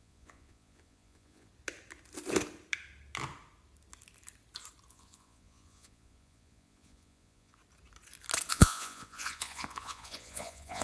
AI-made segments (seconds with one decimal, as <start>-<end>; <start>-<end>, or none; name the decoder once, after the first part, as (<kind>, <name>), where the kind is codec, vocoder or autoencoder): 0.0-1.5 (vocoder, Vocos); 4.9-7.6; 8.5-10.8